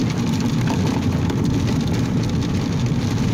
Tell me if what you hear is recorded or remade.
recorded